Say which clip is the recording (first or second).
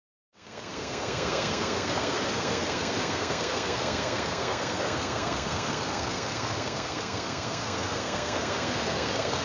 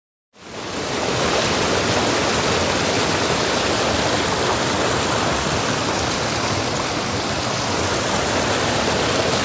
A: second